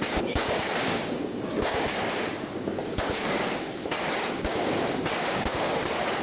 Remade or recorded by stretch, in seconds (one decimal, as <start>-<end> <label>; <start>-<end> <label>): 0.0-6.2 remade